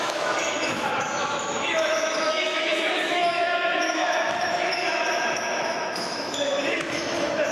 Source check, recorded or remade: remade